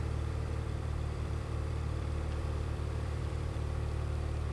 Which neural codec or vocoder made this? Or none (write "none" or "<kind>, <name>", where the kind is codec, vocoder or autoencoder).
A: vocoder, BigVGAN v2